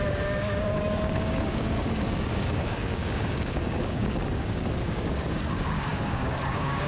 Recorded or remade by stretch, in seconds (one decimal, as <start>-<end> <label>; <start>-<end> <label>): 0.0-6.9 remade